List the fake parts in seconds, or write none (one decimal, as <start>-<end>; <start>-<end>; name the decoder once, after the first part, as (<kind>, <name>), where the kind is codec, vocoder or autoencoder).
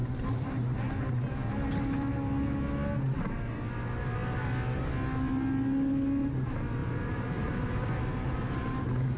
0.0-1.1 (vocoder, BigVGAN v2); 6.8-9.2